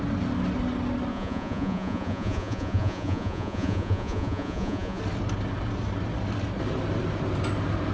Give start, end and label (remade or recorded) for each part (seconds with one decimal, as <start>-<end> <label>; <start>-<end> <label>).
0.0-1.1 recorded; 1.1-5.0 remade; 5.0-7.9 recorded